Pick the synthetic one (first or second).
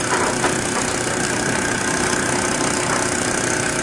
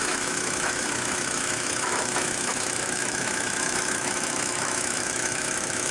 second